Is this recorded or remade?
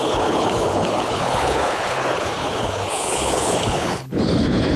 remade